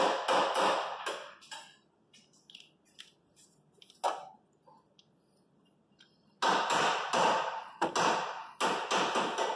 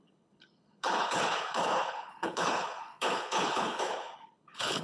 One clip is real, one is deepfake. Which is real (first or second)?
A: first